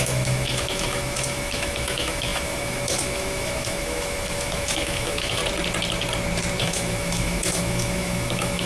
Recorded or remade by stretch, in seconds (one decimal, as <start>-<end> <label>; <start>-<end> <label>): 0.0-5.4 remade; 5.4-6.6 recorded; 6.6-8.7 remade

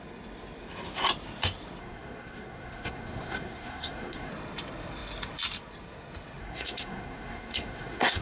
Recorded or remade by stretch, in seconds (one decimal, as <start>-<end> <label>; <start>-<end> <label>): 0.0-1.8 recorded; 1.8-4.3 remade; 4.3-6.4 recorded; 6.4-8.2 remade

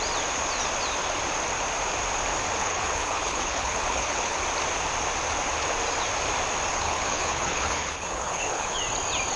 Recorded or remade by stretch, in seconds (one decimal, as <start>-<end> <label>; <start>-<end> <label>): 0.0-2.6 recorded; 2.6-4.4 remade; 4.4-6.7 recorded; 6.7-8.8 remade; 8.8-9.4 recorded

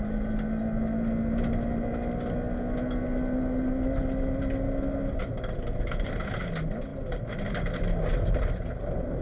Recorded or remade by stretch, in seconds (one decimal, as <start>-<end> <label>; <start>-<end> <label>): 0.0-9.2 recorded

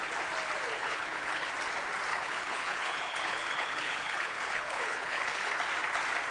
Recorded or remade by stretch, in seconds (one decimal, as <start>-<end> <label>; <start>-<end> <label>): 0.0-0.8 recorded; 0.8-1.5 remade; 1.5-2.1 recorded; 2.1-5.5 remade; 5.5-6.3 recorded